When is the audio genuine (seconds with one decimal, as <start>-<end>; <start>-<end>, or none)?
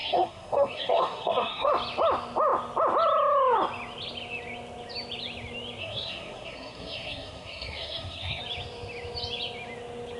1.7-5.8; 8.4-10.2